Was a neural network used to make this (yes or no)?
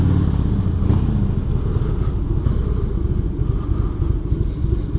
no